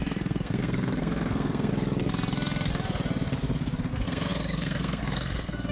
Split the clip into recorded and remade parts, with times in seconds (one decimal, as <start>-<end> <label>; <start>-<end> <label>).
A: 0.0-1.7 remade; 1.7-3.9 recorded; 3.9-5.7 remade